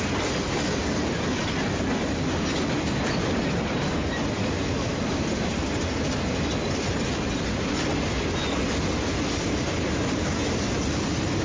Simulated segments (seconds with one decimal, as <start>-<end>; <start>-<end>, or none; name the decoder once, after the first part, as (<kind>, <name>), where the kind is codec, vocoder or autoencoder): 4.9-5.5 (vocoder, BigVGAN v2)